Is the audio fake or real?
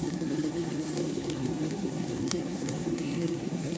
fake